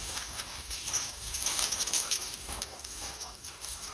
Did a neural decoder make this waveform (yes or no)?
yes